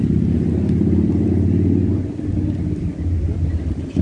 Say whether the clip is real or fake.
real